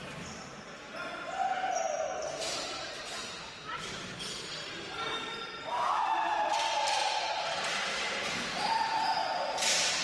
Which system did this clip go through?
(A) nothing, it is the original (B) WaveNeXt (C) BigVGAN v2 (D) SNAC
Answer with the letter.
C